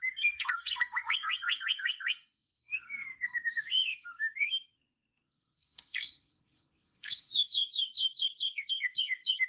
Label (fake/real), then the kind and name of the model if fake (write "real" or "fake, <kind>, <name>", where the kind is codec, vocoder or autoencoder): fake, codec, SNAC